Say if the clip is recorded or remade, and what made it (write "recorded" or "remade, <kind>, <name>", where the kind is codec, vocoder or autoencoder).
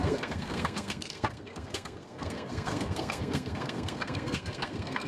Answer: remade, codec, SNAC